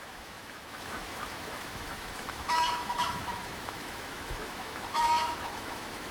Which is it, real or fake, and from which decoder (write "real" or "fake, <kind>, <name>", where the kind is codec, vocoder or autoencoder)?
fake, autoencoder, DAC-VAE